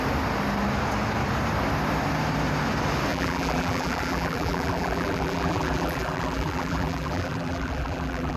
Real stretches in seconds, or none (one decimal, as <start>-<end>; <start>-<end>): 0.0-3.1